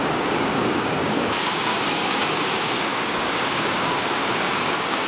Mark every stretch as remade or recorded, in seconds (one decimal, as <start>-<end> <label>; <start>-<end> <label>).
0.0-5.1 remade